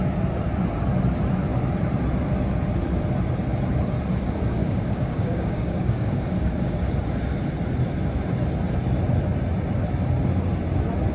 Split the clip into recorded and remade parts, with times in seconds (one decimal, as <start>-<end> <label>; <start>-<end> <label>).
0.0-4.6 recorded; 4.6-6.9 remade; 6.9-11.1 recorded